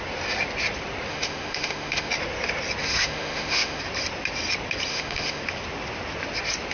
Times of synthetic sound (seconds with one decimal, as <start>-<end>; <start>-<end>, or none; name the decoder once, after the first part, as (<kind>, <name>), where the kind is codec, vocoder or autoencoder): 1.1-2.1 (autoencoder, DAC-VAE); 2.8-3.8; 4.9-5.4